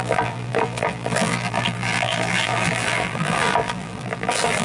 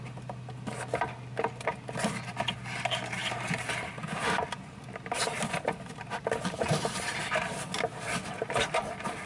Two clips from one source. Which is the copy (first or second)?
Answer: first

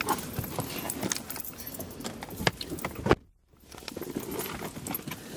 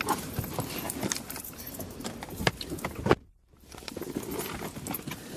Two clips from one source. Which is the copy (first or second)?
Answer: second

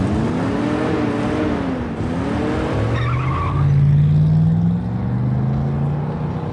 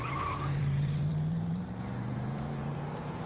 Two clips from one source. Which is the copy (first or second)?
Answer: second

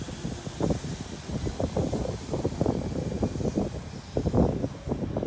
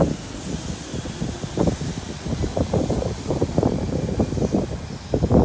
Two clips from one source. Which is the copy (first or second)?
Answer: second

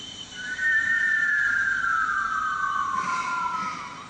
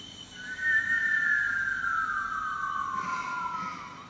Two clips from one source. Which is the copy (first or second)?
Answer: first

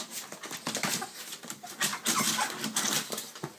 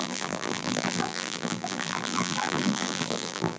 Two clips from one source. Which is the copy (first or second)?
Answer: second